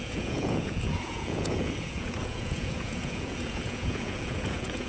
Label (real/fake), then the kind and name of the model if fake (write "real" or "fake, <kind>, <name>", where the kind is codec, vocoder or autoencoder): fake, vocoder, Vocos